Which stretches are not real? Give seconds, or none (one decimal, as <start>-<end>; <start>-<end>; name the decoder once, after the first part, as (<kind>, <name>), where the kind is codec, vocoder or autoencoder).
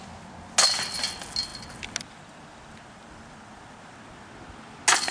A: none